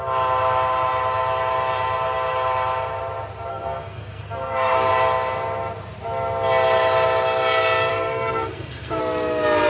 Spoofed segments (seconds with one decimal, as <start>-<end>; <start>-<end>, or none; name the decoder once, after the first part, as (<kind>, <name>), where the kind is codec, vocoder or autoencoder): 3.5-4.9 (codec, SNAC); 7.9-9.0